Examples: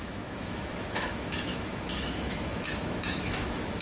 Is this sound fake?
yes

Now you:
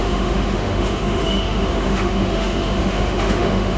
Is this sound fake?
yes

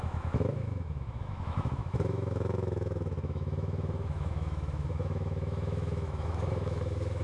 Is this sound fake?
yes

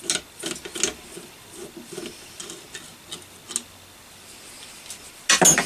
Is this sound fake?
no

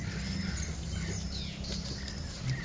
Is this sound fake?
no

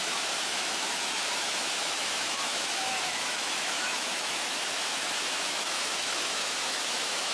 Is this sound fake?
yes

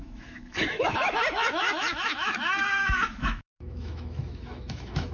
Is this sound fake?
yes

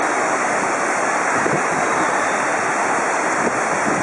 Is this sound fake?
no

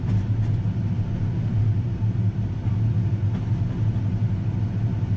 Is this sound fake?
no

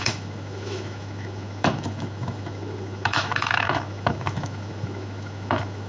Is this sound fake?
yes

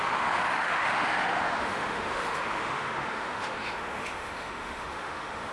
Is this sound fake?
yes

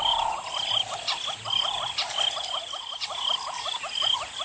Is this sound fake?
no